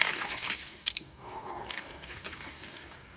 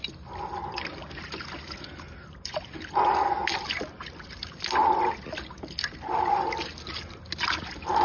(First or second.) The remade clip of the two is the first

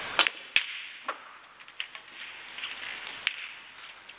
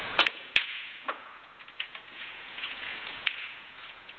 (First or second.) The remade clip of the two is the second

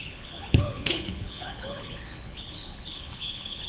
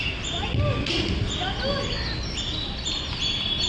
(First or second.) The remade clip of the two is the first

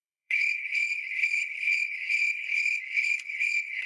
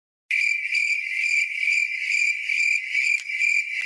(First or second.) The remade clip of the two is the first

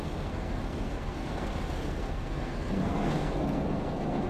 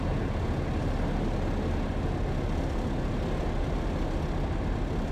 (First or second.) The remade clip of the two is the first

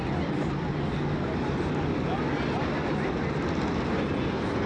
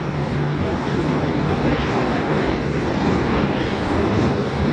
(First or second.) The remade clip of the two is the second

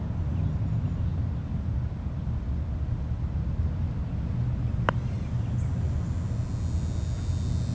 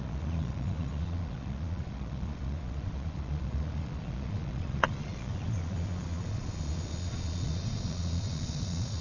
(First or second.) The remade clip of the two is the second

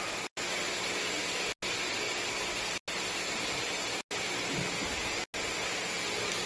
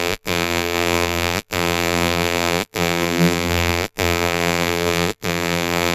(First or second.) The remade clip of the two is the second